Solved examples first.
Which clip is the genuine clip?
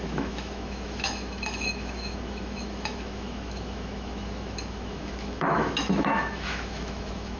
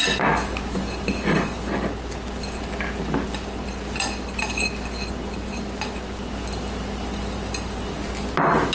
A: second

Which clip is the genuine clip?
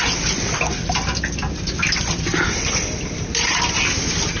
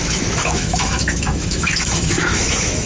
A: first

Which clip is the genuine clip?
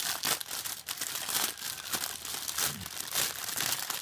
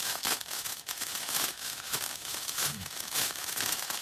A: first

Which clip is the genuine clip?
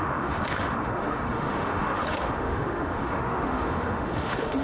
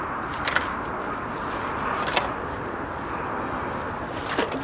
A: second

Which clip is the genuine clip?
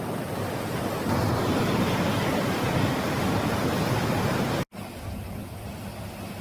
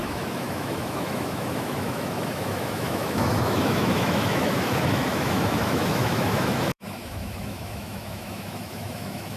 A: first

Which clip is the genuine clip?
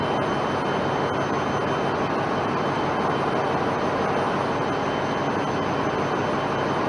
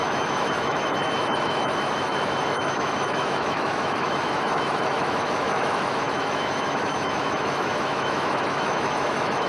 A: first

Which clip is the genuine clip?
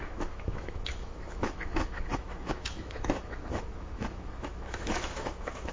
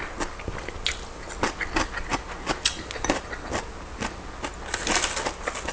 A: second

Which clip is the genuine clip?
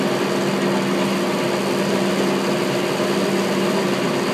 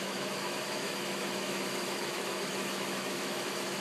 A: first